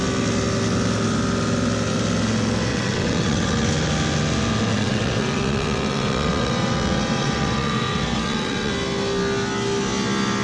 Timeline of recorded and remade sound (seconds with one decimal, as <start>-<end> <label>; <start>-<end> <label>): 0.0-2.7 recorded; 2.7-3.7 remade; 3.7-4.7 recorded; 4.7-8.7 remade; 8.7-10.4 recorded